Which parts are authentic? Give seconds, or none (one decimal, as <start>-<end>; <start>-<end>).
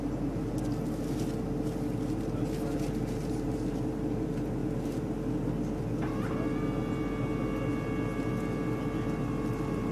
0.0-9.9